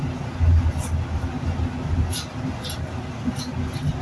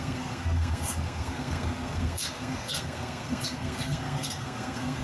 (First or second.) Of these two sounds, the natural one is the first